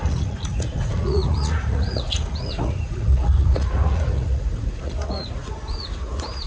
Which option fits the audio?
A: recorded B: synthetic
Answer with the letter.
B